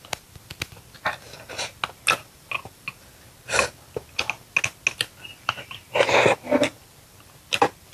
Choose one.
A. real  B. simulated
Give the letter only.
A